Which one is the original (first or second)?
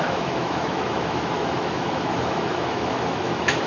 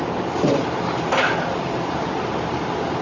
second